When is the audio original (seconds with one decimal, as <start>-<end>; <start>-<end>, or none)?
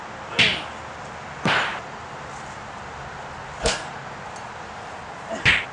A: 0.0-3.4; 4.0-5.7